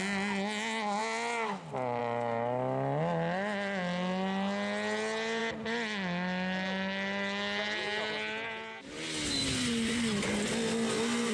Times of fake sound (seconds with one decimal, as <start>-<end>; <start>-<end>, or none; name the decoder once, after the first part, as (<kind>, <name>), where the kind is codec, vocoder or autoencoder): none